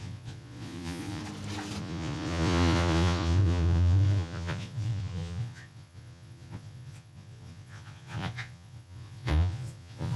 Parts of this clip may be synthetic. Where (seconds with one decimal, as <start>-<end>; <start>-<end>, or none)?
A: 0.0-1.2; 1.8-10.2

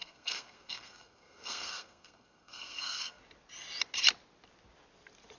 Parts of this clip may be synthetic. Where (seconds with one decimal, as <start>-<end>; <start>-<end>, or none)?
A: 0.0-3.2

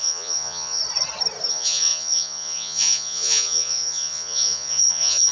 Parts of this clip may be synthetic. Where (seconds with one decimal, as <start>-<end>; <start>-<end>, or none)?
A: 0.0-0.8; 1.5-5.3

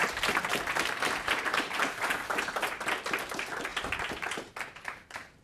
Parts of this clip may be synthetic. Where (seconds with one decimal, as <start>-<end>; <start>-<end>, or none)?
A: 0.5-1.8; 3.7-4.5

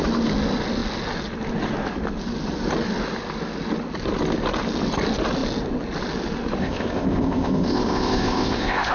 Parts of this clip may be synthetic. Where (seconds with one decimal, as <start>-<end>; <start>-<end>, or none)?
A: 6.6-8.9

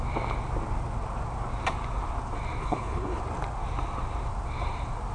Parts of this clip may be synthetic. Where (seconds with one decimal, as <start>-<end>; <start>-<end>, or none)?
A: 2.6-3.2

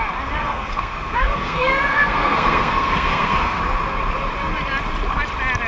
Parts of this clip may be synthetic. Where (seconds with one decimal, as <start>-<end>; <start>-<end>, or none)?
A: 0.4-3.6

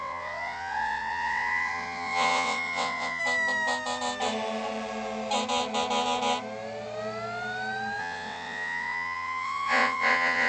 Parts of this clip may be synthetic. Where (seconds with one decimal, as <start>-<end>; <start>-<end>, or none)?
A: 0.0-3.2; 8.0-10.5